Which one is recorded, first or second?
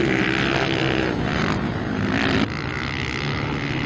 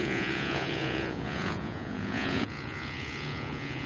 first